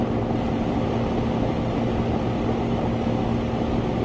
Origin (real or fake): real